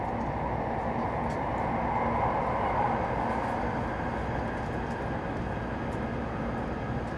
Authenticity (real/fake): real